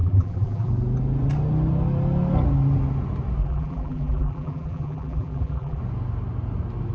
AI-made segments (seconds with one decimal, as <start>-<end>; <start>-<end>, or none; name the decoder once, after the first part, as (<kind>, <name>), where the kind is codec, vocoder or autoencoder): 0.0-0.7 (vocoder, BigVGAN v2); 3.4-5.8